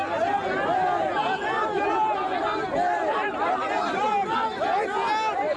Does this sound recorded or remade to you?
recorded